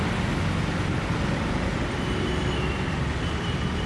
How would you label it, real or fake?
real